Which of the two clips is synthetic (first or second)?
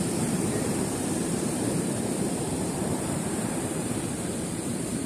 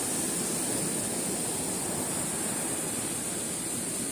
first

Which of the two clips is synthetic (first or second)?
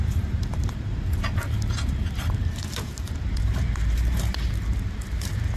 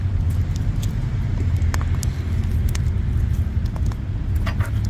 first